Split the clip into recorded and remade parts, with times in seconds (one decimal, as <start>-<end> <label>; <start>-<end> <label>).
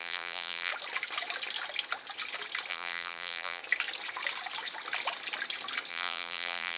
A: 0.0-0.7 remade; 0.7-2.7 recorded; 2.7-3.6 remade; 3.6-5.9 recorded; 5.9-6.8 remade